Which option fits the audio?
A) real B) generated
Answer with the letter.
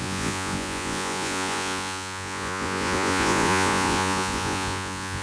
B